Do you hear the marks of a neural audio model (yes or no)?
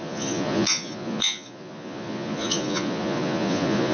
yes